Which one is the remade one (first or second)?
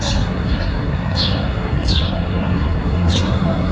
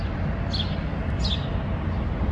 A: first